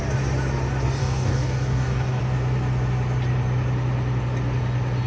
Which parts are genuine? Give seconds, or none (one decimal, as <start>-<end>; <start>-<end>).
0.0-1.0; 2.2-5.1